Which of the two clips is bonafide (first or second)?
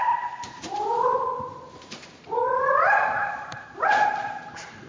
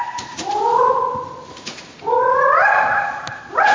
second